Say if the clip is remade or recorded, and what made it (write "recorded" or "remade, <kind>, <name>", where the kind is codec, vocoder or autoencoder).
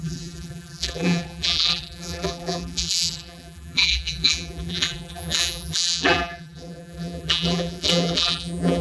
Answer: remade, vocoder, BigVGAN v2